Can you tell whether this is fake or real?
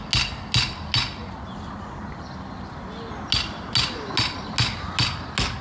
real